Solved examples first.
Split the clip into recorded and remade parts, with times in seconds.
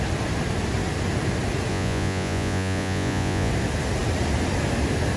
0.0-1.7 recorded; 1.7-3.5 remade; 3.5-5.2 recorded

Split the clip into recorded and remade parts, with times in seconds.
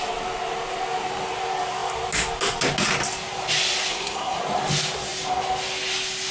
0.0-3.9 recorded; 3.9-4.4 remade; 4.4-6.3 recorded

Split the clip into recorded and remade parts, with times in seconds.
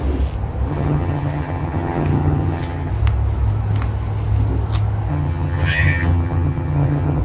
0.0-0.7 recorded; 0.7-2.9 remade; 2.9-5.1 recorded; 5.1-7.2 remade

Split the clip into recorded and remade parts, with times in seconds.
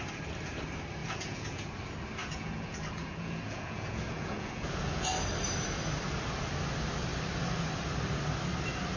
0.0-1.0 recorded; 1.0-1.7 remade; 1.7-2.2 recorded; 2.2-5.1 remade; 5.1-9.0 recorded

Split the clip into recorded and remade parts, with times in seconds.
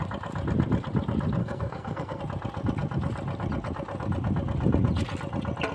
0.0-1.4 recorded; 1.4-2.2 remade; 2.2-5.7 recorded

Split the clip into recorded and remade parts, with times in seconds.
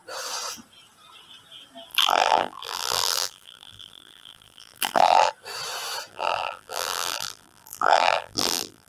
0.0-1.9 recorded; 1.9-5.3 remade; 5.3-6.1 recorded; 6.1-8.9 remade